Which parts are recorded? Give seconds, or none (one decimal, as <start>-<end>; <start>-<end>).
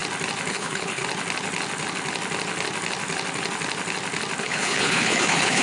0.0-0.5; 1.0-4.4